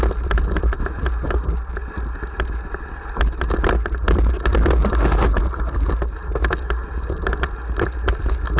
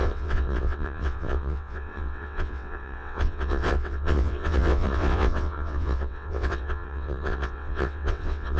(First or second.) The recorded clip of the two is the first